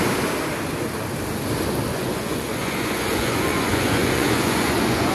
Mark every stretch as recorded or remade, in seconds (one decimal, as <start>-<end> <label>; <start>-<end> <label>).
0.0-1.9 recorded; 1.9-5.1 remade

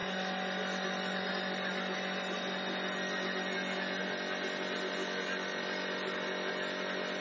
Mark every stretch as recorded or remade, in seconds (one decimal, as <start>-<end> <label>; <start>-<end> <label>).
0.0-7.2 recorded

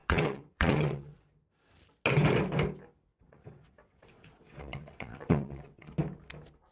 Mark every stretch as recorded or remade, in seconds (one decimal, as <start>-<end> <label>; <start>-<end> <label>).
0.0-1.2 remade; 1.2-3.1 recorded; 3.1-5.9 remade; 5.9-6.7 recorded

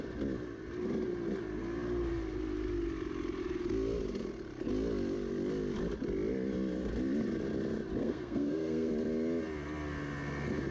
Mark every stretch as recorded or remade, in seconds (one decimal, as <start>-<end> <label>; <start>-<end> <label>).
0.0-8.0 recorded; 8.0-8.9 remade; 8.9-10.7 recorded

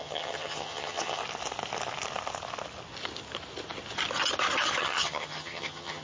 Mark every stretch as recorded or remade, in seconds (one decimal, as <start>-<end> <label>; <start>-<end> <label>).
0.0-1.2 remade; 1.2-4.8 recorded; 4.8-6.0 remade

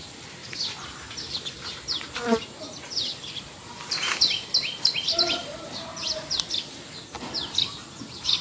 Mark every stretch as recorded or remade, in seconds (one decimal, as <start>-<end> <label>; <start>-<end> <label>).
0.0-8.4 recorded

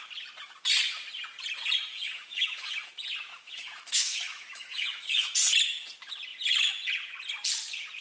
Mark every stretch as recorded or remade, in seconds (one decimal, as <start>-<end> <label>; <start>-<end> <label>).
0.0-1.9 recorded; 1.9-2.9 remade; 2.9-3.3 recorded; 3.3-5.3 remade; 5.3-8.0 recorded